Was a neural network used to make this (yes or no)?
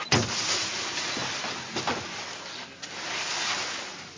no